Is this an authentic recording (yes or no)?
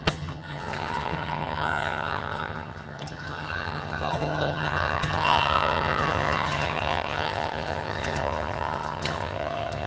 no